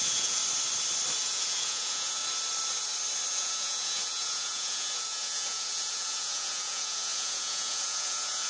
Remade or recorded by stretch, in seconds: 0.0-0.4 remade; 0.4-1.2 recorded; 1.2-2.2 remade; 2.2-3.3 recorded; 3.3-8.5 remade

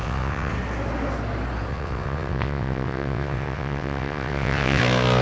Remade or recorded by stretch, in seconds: 0.0-0.5 remade; 0.5-1.7 recorded; 1.7-4.8 remade; 4.8-5.2 recorded

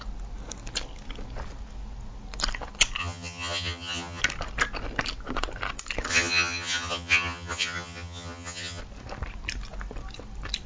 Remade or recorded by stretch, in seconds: 0.0-3.0 recorded; 3.0-4.2 remade; 4.2-6.1 recorded; 6.1-8.8 remade; 8.8-10.7 recorded

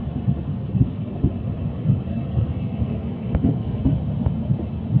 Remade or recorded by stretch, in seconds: 0.0-0.5 recorded; 0.5-1.2 remade; 1.2-2.1 recorded; 2.1-3.8 remade; 3.8-5.0 recorded

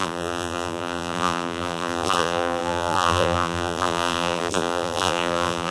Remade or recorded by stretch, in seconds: 0.0-5.7 remade

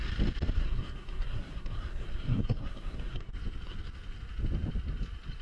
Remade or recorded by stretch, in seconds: 0.0-0.6 recorded; 0.6-3.3 remade; 3.3-5.4 recorded

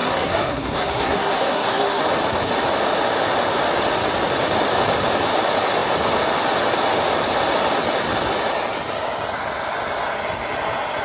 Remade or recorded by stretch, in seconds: 0.0-2.0 remade; 2.0-11.0 recorded